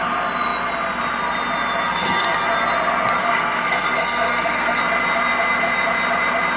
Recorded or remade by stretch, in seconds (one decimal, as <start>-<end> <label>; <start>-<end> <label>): 0.0-1.9 recorded; 1.9-2.5 remade; 2.5-3.2 recorded; 3.2-4.8 remade; 4.8-6.6 recorded